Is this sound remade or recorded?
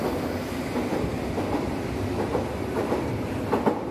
recorded